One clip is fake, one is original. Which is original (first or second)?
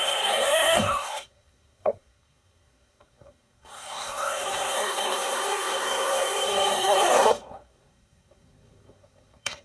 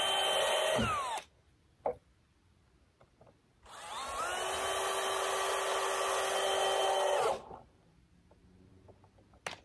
second